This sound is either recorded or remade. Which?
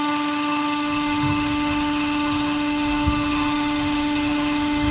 remade